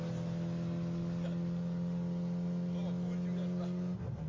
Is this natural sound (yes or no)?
yes